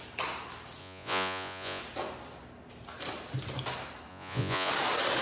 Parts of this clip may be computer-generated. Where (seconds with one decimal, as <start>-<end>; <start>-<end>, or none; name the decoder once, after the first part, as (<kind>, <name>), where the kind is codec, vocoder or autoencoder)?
0.8-1.8 (vocoder, Vocos); 4.1-4.7